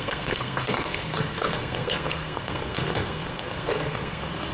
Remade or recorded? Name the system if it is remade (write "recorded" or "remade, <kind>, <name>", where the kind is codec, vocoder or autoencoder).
remade, codec, SNAC